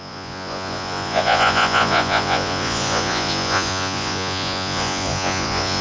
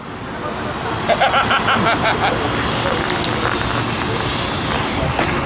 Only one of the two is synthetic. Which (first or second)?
first